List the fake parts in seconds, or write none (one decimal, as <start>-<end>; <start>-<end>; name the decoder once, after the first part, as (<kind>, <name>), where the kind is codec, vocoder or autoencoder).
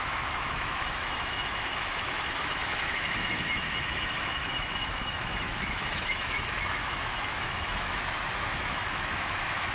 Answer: 0.0-9.7 (autoencoder, DAC-VAE)